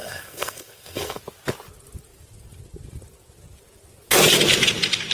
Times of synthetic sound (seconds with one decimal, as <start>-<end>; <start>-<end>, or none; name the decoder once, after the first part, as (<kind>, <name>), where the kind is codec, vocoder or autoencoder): 0.0-1.2 (codec, SNAC)